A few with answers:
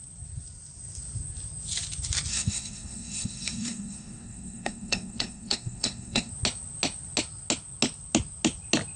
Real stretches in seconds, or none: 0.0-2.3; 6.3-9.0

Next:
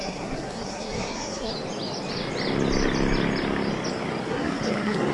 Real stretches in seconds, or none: 1.5-4.3